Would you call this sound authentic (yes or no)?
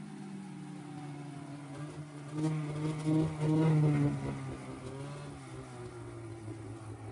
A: yes